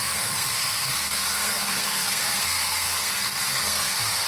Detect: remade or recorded remade